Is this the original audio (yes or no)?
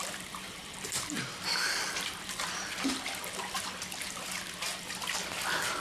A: no